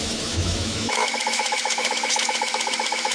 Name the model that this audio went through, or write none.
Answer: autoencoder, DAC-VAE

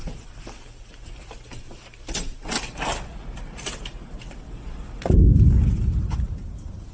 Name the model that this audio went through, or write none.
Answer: none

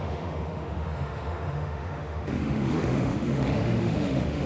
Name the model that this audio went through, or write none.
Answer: autoencoder, DAC-VAE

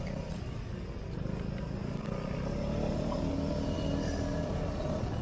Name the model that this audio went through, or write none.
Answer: none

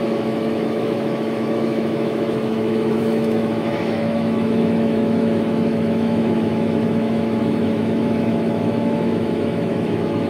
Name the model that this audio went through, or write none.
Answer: autoencoder, DAC-VAE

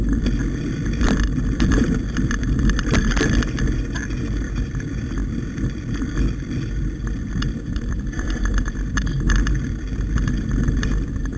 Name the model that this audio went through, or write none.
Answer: none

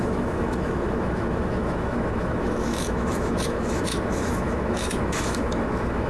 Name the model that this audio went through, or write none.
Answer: autoencoder, DAC-VAE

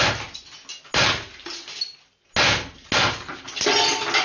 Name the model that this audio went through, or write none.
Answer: none